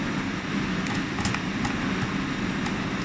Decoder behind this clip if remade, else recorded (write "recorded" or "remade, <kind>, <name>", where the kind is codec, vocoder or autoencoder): recorded